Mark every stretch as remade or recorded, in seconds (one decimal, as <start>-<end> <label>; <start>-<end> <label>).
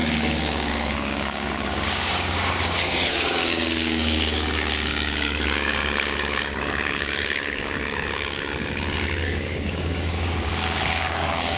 0.0-11.6 remade